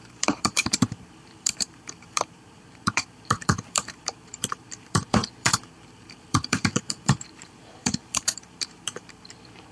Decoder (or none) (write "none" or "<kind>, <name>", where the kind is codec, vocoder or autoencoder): vocoder, BigVGAN v2